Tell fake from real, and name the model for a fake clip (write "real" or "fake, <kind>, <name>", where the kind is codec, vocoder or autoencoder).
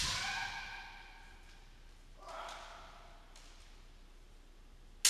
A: real